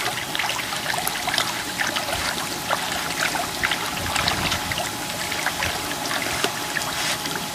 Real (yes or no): yes